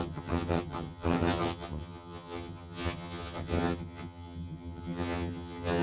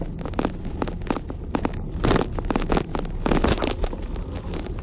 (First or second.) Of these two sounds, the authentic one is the second